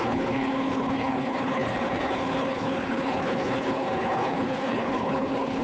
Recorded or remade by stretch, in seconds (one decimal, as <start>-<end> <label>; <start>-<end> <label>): 0.0-5.6 remade